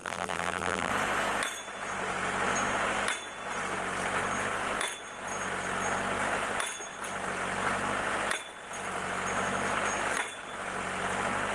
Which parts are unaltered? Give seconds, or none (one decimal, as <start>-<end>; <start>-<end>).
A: 0.9-11.5